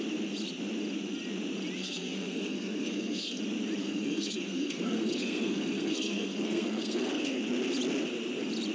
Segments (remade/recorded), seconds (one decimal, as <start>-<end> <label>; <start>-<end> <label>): 0.0-1.8 recorded; 1.8-3.4 remade; 3.4-3.8 recorded; 3.8-7.4 remade; 7.4-8.7 recorded